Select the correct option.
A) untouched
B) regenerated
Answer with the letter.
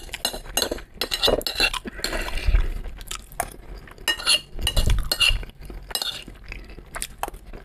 A